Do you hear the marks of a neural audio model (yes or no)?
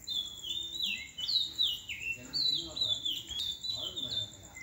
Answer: no